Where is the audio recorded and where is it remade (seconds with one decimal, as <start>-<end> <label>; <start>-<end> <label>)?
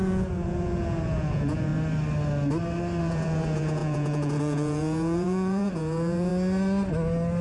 0.0-1.7 remade; 1.7-3.0 recorded; 3.0-6.3 remade; 6.3-7.4 recorded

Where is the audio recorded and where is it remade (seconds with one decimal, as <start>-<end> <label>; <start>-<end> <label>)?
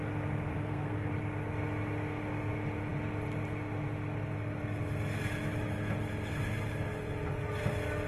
0.0-0.5 recorded; 0.5-1.1 remade; 1.1-8.1 recorded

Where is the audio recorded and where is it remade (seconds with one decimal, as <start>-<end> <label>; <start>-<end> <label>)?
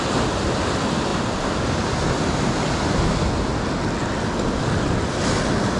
0.0-5.8 recorded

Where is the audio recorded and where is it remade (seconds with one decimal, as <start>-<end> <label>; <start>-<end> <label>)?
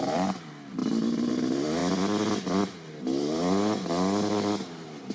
0.0-5.1 recorded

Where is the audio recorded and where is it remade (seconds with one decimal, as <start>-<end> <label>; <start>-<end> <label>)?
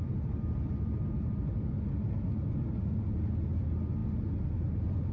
0.0-5.1 recorded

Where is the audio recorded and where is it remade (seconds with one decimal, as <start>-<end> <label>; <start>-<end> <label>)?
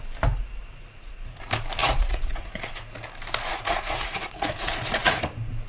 0.0-0.8 recorded; 0.8-1.4 remade; 1.4-1.8 recorded; 1.8-2.7 remade; 2.7-3.5 recorded; 3.5-5.2 remade; 5.2-5.7 recorded